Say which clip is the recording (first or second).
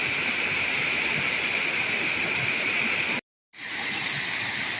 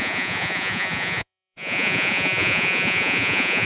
first